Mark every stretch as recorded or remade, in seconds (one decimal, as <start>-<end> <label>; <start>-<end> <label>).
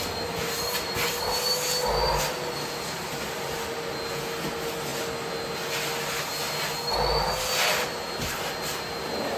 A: 0.0-9.4 recorded